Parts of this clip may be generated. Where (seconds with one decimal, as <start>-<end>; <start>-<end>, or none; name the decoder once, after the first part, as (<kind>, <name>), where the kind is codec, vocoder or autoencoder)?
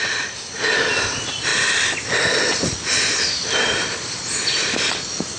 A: none